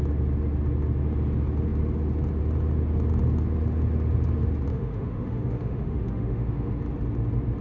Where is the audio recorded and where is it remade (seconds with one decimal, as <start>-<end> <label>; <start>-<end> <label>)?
0.0-4.7 recorded; 4.7-6.7 remade; 6.7-7.6 recorded